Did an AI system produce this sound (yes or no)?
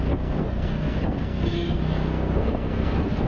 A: yes